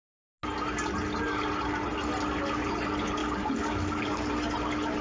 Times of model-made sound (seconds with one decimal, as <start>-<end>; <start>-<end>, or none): 3.2-4.3